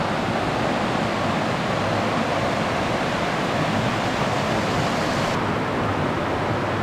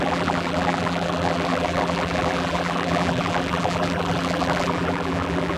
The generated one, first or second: second